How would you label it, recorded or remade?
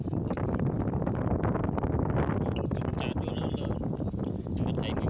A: recorded